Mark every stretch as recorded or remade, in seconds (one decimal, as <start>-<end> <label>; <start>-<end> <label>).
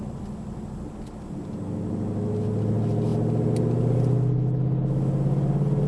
0.0-5.9 recorded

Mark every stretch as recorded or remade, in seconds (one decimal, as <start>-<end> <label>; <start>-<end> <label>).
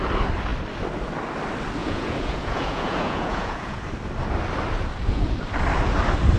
0.0-1.8 recorded; 1.8-3.8 remade; 3.8-6.4 recorded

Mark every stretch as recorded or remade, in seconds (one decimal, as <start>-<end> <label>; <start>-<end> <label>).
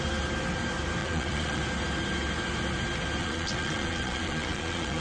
0.0-1.0 recorded; 1.0-1.6 remade; 1.6-3.2 recorded; 3.2-5.0 remade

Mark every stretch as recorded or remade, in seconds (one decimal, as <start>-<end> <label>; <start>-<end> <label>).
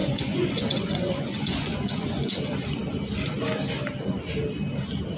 0.0-2.3 remade; 2.3-5.2 recorded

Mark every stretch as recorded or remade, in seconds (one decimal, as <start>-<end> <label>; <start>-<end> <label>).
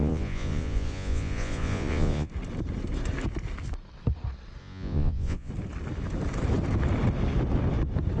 0.0-2.3 remade; 2.3-4.6 recorded; 4.6-5.5 remade; 5.5-8.2 recorded